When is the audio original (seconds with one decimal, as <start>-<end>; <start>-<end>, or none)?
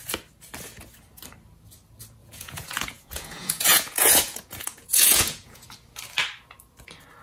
0.0-2.2; 5.7-7.2